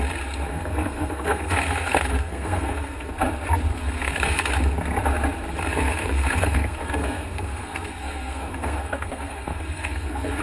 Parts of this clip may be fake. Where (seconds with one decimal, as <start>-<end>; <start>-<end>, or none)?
0.5-3.1; 3.7-4.5; 5.7-10.4